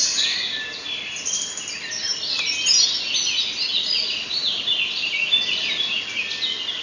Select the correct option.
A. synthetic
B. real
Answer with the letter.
B